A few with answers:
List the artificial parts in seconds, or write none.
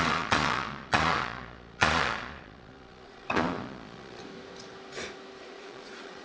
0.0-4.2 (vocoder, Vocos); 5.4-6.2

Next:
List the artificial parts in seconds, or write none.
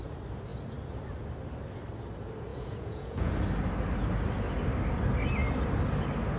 2.5-3.3 (vocoder, Vocos)